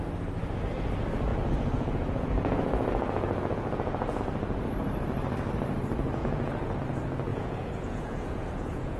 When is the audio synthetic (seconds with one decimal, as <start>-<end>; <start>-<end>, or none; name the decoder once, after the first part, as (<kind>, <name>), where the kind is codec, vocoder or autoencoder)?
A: 1.3-4.2 (vocoder, Vocos); 6.2-6.8; 7.3-9.0